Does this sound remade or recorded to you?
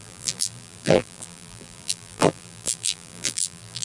remade